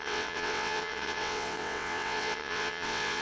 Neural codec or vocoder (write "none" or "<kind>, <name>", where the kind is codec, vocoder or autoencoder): vocoder, WaveNeXt